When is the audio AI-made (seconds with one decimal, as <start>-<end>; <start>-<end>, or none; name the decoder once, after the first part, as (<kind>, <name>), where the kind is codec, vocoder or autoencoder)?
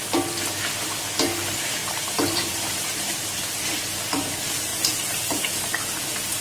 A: 1.8-3.4 (vocoder, BigVGAN v2); 4.7-5.4